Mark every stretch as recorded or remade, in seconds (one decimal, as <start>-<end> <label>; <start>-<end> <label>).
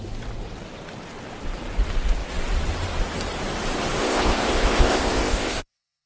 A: 0.0-4.0 recorded; 4.0-6.1 remade